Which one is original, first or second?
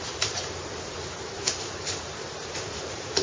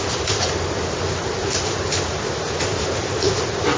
second